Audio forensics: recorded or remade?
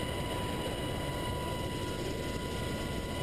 recorded